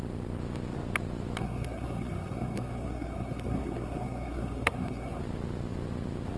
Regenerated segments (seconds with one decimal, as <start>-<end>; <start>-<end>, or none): 1.4-5.2